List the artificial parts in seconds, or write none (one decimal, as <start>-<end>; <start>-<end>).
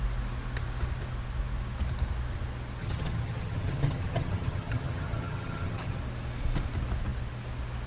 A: 2.8-6.0